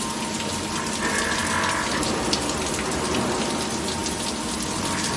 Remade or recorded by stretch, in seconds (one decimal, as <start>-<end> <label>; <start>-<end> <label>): 0.0-5.2 recorded